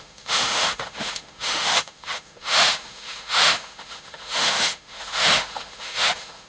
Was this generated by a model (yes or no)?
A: yes